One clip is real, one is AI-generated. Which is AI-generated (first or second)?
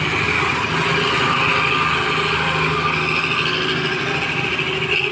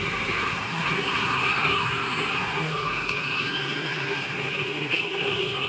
second